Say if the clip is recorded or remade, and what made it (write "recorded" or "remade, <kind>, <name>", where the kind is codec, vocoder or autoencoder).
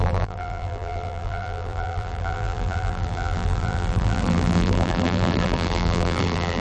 remade, vocoder, BigVGAN v2